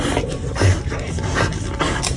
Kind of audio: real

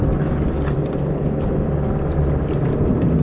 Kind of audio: fake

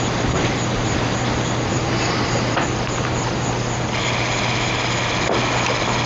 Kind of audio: real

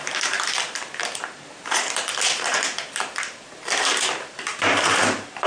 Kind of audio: fake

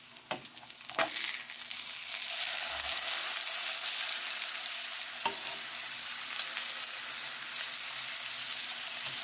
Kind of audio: real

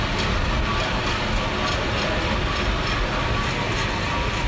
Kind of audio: real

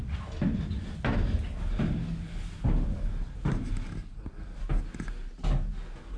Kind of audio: real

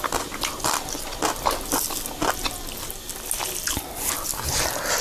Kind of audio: real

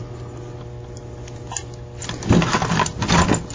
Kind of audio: real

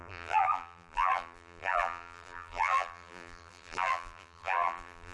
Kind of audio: fake